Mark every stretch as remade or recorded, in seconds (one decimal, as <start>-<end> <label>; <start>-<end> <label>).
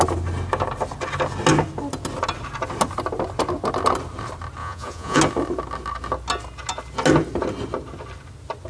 0.0-4.6 recorded; 4.6-5.2 remade; 5.2-8.7 recorded